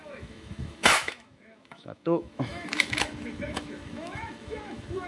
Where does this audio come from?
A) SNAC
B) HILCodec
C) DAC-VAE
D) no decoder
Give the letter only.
C